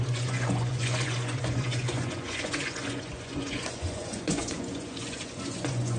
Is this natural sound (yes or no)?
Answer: no